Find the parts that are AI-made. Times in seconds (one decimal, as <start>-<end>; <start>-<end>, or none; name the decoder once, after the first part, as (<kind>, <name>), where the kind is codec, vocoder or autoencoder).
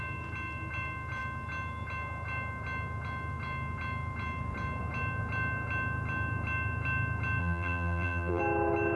7.4-8.4 (vocoder, BigVGAN v2)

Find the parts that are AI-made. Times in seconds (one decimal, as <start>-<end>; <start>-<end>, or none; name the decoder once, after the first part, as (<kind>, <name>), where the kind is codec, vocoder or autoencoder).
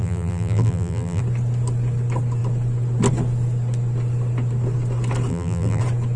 0.0-1.2 (vocoder, BigVGAN v2); 5.3-5.8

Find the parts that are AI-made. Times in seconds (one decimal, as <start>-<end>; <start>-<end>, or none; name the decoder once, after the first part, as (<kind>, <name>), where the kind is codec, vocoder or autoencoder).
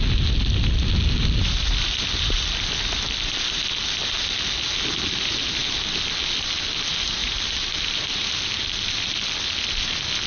7.2-8.3 (vocoder, BigVGAN v2)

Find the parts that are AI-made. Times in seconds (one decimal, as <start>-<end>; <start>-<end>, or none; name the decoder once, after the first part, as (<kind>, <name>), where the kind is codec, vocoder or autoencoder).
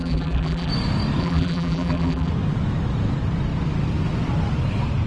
0.0-0.7 (vocoder, BigVGAN v2); 1.2-2.3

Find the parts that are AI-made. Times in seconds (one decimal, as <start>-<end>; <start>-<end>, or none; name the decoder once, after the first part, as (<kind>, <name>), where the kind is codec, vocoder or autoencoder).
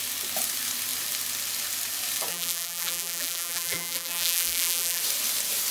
2.3-5.0 (vocoder, BigVGAN v2)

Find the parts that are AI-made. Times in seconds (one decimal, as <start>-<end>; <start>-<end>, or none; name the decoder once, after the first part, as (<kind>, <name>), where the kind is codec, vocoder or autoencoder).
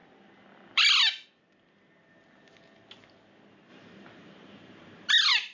3.7-5.1 (vocoder, BigVGAN v2)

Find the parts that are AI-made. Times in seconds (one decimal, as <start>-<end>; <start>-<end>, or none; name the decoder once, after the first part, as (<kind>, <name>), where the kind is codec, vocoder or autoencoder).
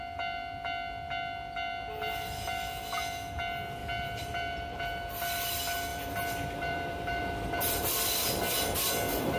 3.8-4.8 (vocoder, BigVGAN v2); 5.9-7.9